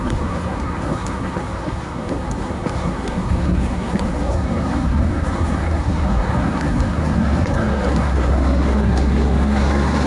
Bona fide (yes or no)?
no